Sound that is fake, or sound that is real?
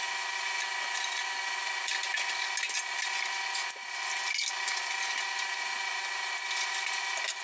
real